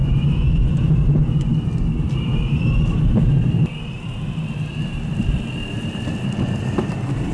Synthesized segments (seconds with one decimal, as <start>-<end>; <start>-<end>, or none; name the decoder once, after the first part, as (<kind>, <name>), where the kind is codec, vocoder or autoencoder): 0.0-0.8 (vocoder, Vocos)

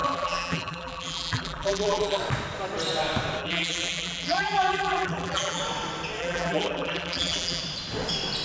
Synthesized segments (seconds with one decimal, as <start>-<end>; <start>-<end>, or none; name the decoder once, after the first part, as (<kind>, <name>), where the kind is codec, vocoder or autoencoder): 0.0-2.2 (vocoder, BigVGAN v2); 3.4-5.6; 6.2-7.6

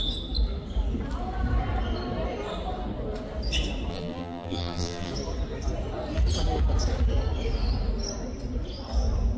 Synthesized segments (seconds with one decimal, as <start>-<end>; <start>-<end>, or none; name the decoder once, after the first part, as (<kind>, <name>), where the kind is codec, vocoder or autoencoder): 3.9-5.1 (vocoder, BigVGAN v2)

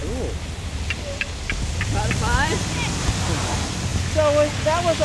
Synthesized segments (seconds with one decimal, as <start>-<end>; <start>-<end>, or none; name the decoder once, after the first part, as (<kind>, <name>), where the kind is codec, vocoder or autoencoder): none

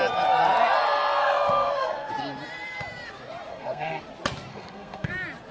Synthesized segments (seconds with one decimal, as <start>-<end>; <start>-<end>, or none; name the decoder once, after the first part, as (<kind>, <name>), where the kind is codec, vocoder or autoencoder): 1.2-2.1 (codec, SNAC); 3.5-4.0; 4.5-5.1

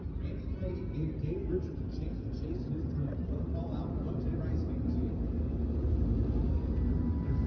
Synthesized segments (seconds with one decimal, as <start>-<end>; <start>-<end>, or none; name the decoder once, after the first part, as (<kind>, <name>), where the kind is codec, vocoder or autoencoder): none